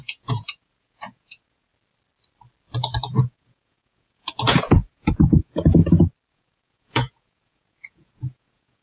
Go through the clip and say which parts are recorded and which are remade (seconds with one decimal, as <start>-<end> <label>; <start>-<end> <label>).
0.0-1.7 remade; 1.7-3.2 recorded; 3.2-5.8 remade; 5.8-6.3 recorded; 6.3-8.8 remade